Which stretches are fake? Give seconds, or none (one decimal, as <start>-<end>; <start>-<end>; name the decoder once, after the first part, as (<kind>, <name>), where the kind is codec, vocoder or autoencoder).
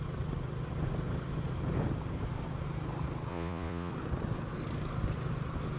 3.3-3.9 (vocoder, Vocos)